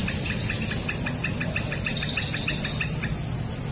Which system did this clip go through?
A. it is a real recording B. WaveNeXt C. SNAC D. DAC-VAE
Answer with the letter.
A